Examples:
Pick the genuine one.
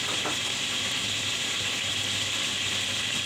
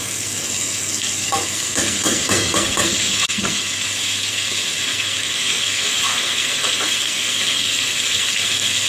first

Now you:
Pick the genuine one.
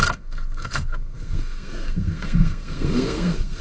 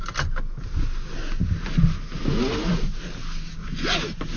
second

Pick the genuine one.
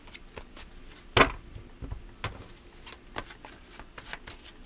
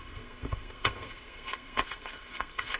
first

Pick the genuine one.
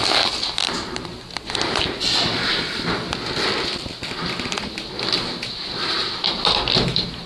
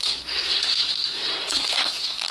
first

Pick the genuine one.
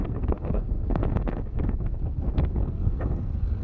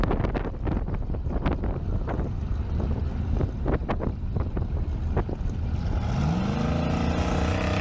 second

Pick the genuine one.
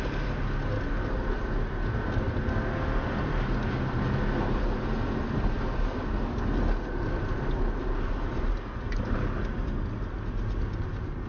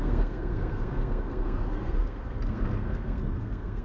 first